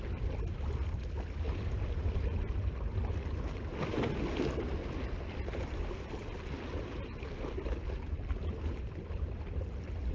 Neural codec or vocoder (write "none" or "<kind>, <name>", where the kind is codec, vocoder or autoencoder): none